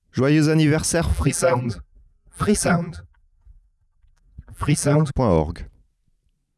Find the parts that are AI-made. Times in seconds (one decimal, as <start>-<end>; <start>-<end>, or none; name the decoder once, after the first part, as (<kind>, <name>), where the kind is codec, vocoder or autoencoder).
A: 1.1-5.1 (vocoder, BigVGAN v2)